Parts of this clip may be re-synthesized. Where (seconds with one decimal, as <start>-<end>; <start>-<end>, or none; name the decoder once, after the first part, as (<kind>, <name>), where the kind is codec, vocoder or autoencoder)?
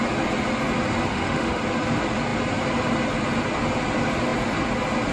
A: 1.1-1.6 (autoencoder, DAC-VAE)